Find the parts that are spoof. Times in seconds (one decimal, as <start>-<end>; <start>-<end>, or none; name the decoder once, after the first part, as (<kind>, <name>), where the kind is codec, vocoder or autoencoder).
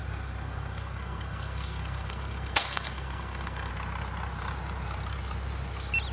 0.0-3.7 (codec, SNAC)